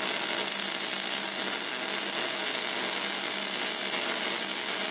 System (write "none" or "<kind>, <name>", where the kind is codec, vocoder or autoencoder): none